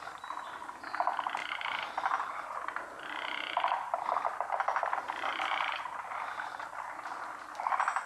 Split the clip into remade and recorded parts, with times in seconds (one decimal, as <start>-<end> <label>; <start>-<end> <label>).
0.0-8.1 recorded